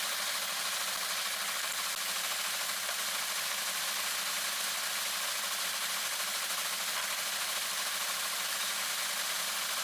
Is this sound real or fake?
real